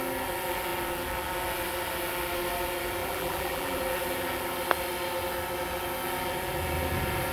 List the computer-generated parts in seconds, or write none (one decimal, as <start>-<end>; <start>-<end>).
3.0-3.8